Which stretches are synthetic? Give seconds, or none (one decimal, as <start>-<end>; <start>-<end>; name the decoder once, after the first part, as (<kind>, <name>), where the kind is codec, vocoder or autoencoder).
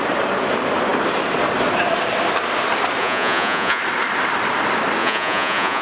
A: 3.0-3.8 (vocoder, Vocos); 5.0-5.8